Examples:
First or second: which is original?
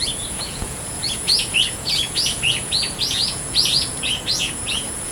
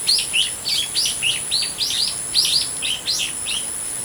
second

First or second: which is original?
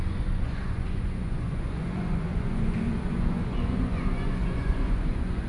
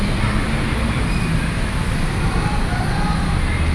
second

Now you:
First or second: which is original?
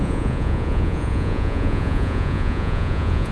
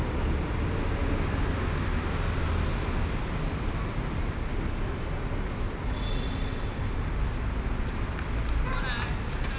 second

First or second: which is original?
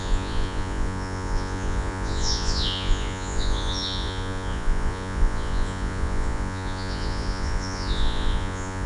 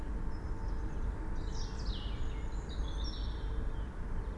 second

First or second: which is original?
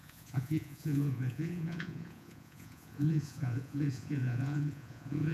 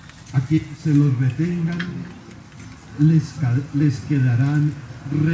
second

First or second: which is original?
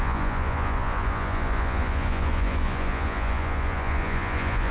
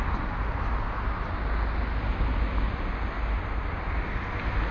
second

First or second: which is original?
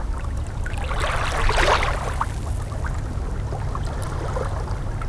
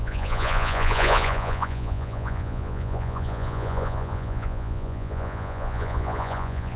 first